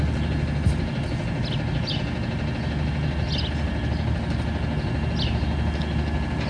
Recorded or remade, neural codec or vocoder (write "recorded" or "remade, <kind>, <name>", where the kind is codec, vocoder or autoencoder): recorded